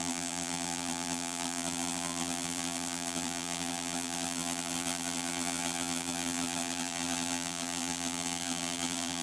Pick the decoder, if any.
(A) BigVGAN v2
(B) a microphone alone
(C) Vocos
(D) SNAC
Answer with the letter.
A